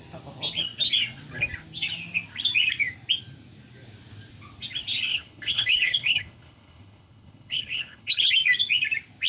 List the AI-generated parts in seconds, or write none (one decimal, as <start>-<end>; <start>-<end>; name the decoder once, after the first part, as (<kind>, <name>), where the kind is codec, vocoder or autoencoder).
5.1-8.3 (codec, HILCodec)